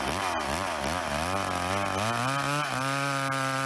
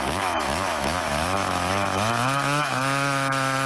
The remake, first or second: second